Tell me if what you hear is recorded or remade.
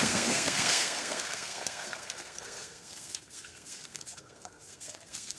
remade